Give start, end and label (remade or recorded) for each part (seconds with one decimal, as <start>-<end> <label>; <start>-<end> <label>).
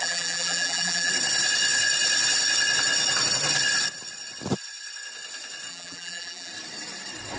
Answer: 0.0-1.1 remade; 1.1-5.7 recorded; 5.7-6.5 remade; 6.5-7.4 recorded